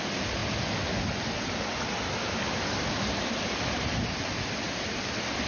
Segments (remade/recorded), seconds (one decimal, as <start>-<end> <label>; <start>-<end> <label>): 0.0-5.5 recorded

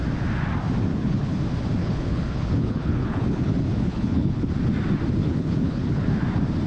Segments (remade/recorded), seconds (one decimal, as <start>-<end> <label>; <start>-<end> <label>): 0.0-0.9 recorded; 0.9-1.4 remade; 1.4-1.8 recorded; 1.8-4.5 remade; 4.5-5.2 recorded; 5.2-6.2 remade; 6.2-6.7 recorded

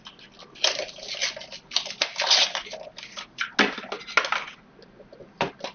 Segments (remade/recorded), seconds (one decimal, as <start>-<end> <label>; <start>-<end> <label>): 0.0-5.7 recorded